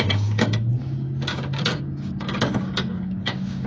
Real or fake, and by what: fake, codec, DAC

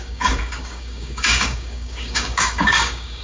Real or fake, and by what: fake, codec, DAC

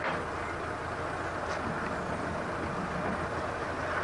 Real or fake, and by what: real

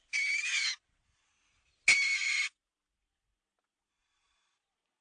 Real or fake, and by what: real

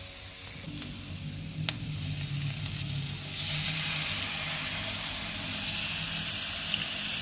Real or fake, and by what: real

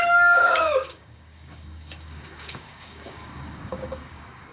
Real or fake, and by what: fake, codec, DAC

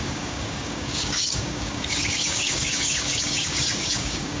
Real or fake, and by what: fake, codec, DAC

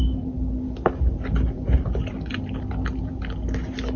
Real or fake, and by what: real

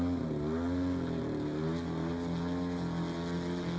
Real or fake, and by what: real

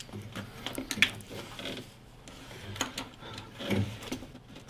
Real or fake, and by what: real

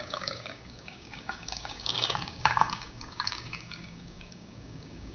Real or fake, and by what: fake, codec, DAC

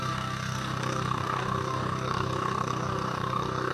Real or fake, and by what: fake, codec, DAC